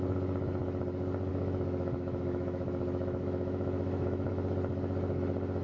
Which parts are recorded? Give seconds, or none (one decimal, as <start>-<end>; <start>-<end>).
0.0-1.3; 4.3-5.6